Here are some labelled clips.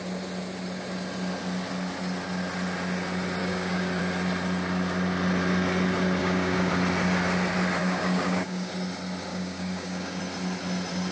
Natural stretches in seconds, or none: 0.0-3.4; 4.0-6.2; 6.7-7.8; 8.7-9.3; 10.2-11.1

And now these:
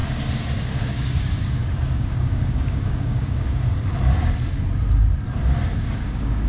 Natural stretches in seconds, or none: 0.0-0.8; 3.7-5.9

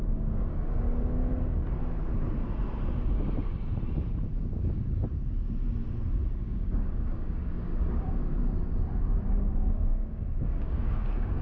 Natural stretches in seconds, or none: 1.2-6.4; 7.7-9.0

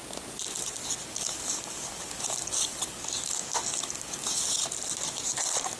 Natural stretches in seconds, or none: 0.0-1.1; 4.4-5.8

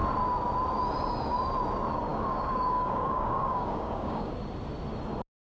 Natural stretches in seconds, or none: 0.0-2.1; 4.3-5.6